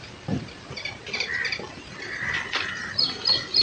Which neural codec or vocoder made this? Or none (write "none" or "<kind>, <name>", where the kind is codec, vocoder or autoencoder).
none